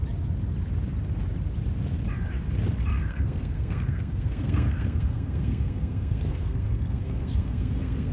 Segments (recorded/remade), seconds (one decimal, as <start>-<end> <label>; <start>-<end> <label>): 0.0-2.9 recorded; 2.9-8.1 remade